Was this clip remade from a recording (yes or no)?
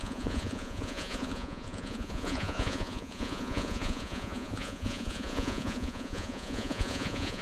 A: yes